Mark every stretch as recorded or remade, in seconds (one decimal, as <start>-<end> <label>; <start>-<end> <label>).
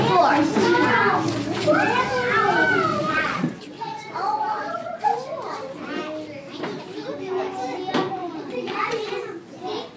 0.0-2.9 recorded; 2.9-5.0 remade; 5.0-8.2 recorded; 8.2-9.1 remade; 9.1-10.0 recorded